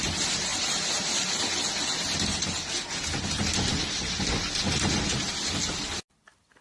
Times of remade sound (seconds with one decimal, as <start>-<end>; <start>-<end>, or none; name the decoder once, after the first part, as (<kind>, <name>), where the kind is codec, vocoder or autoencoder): 0.5-1.4 (vocoder, BigVGAN v2)